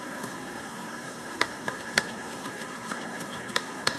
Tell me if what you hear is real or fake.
fake